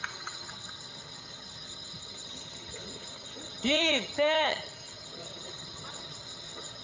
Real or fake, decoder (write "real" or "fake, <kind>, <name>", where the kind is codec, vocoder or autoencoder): fake, vocoder, HiFi-GAN